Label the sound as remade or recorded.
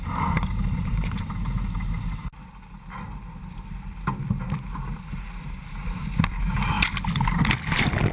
recorded